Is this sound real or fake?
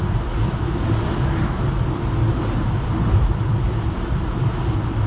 real